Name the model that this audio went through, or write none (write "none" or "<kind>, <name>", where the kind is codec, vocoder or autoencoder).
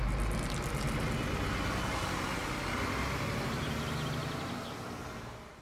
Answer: none